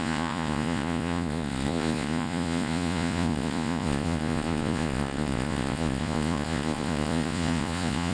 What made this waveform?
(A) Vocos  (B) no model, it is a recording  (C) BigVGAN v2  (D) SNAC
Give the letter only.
A